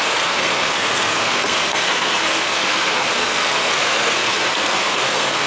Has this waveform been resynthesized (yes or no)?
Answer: yes